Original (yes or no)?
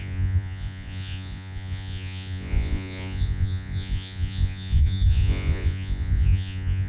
no